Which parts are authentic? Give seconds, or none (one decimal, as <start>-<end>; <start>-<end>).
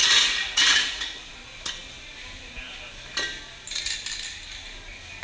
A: 1.3-5.2